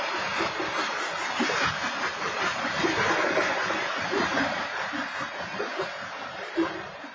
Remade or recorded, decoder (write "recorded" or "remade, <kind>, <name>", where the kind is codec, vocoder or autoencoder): remade, vocoder, BigVGAN v2